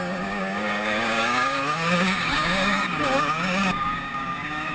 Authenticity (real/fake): fake